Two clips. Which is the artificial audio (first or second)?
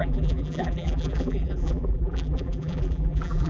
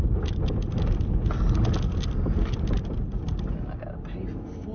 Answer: first